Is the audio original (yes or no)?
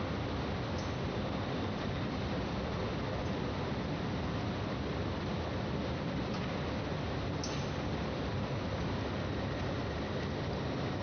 yes